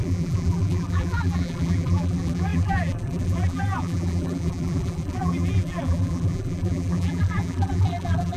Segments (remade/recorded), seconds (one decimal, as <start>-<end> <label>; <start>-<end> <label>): 0.0-8.4 remade